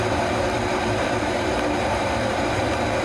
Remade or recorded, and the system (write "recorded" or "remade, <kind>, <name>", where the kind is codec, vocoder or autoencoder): remade, vocoder, BigVGAN v2